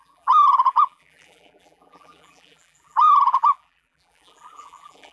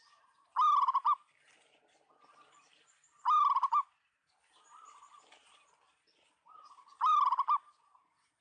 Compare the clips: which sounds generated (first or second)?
first